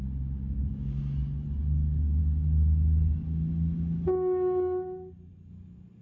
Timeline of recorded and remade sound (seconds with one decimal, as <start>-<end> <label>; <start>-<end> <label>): 0.0-0.4 recorded; 0.4-1.0 remade; 1.0-6.0 recorded